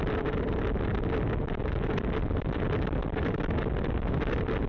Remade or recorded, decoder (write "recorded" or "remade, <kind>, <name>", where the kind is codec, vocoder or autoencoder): recorded